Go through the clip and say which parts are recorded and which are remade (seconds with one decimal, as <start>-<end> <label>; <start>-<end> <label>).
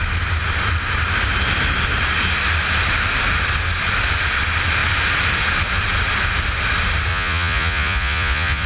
0.0-7.1 recorded; 7.1-8.7 remade